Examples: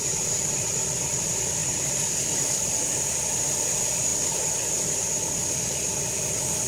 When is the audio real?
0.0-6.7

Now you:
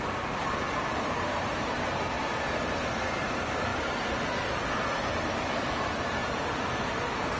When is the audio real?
6.2-6.9